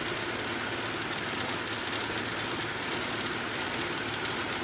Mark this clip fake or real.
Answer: real